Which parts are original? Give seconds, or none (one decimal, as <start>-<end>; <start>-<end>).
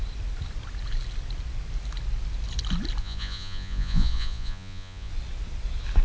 0.0-3.0; 5.1-6.0